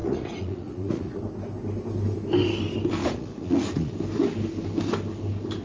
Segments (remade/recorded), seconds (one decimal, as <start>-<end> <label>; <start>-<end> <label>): 0.0-1.2 remade; 1.2-3.0 recorded; 3.0-3.9 remade; 3.9-5.6 recorded